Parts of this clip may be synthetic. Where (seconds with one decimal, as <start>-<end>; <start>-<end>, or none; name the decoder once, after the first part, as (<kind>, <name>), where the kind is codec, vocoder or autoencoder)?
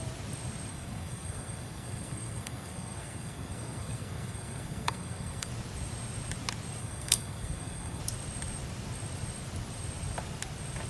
0.7-5.5 (codec, SNAC); 6.8-8.0